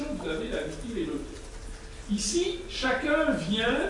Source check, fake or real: real